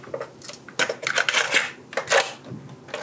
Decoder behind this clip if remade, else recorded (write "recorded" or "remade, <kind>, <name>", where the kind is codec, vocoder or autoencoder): recorded